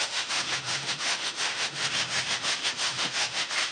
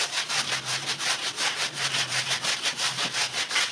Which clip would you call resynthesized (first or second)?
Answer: first